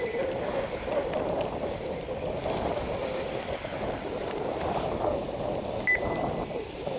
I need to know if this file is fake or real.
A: real